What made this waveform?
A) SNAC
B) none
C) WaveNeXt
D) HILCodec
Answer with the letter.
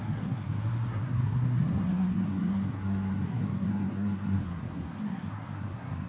A